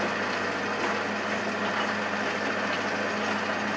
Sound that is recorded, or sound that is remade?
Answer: recorded